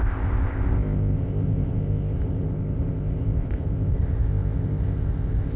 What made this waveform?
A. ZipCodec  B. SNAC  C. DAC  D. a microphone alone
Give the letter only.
A